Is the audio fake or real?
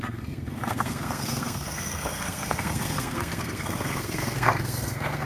fake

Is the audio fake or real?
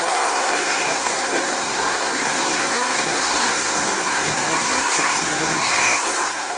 fake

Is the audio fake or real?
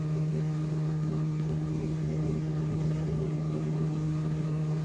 fake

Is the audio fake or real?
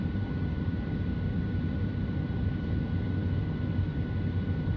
real